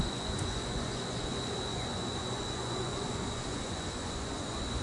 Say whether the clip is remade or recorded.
remade